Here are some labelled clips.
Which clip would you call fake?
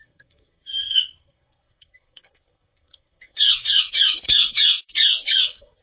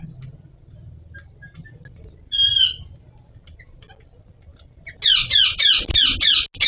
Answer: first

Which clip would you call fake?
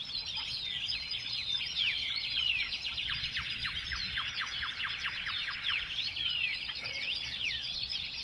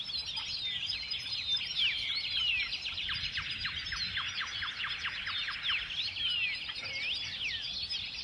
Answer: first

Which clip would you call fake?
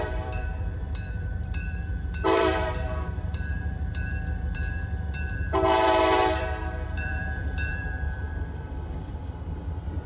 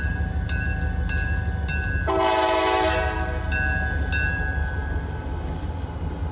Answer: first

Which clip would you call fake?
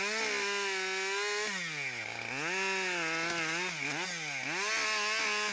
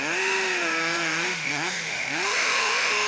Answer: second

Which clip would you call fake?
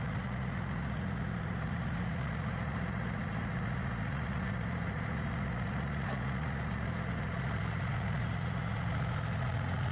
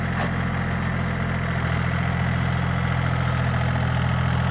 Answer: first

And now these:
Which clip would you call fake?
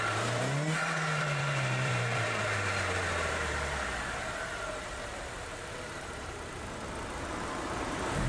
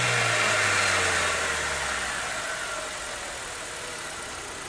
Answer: first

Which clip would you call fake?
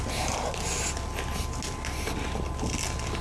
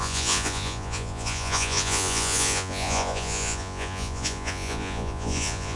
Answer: second